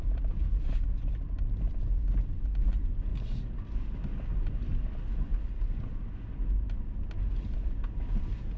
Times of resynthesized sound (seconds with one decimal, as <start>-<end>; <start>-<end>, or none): none